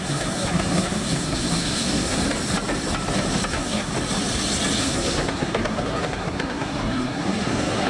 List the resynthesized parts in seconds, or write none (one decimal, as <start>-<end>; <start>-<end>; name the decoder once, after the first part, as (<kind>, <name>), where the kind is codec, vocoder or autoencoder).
0.0-2.2 (codec, SNAC); 3.5-3.9; 4.8-7.9